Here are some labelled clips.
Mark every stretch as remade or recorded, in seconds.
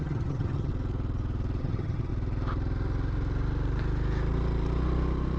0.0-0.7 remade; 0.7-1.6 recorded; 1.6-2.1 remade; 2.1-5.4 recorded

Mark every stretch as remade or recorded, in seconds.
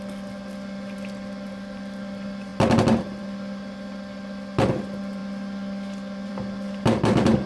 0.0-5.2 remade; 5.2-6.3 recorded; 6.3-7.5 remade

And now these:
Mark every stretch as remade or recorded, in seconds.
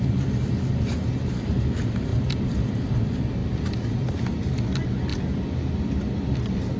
0.0-6.8 recorded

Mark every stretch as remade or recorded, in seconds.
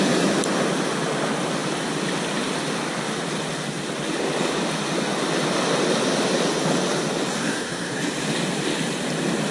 0.0-7.4 recorded; 7.4-8.0 remade; 8.0-9.5 recorded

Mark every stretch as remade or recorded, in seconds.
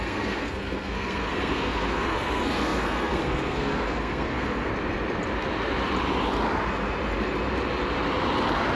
0.0-4.7 remade; 4.7-8.8 recorded